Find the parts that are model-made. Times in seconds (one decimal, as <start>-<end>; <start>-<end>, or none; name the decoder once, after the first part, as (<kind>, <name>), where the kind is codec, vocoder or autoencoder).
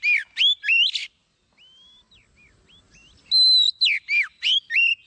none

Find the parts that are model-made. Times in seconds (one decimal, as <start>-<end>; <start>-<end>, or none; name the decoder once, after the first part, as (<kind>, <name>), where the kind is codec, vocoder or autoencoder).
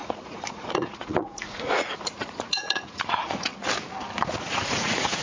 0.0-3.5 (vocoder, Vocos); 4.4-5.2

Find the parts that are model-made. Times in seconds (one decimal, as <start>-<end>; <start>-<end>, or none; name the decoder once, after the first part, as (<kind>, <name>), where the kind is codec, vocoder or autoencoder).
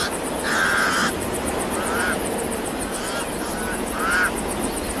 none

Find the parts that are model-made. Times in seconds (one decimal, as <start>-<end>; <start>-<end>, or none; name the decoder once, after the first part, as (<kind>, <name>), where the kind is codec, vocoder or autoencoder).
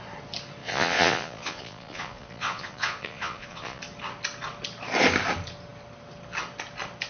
0.6-3.8 (vocoder, Vocos)